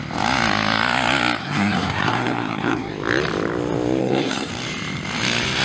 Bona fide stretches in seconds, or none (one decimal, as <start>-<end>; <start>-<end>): 0.0-1.4; 2.9-4.0; 4.5-5.6